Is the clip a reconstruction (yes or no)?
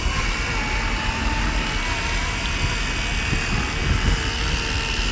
no